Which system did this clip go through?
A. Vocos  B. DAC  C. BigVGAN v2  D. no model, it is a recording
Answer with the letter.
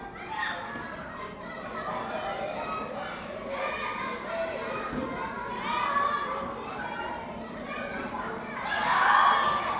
D